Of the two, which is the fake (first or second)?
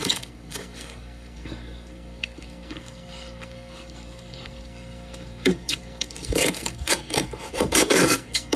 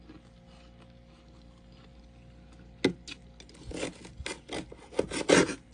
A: first